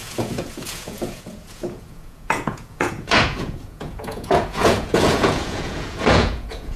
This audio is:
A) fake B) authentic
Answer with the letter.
A